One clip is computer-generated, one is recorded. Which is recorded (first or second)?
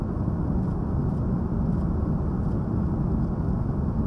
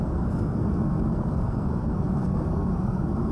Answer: first